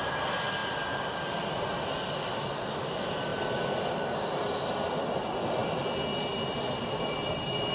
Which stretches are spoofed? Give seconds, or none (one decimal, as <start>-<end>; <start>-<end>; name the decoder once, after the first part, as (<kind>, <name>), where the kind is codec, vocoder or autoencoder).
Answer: none